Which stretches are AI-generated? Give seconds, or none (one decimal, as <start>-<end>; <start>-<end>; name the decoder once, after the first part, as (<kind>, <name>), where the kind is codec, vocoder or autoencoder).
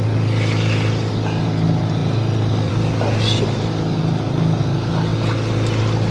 none